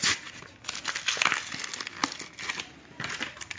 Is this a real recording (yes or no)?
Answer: yes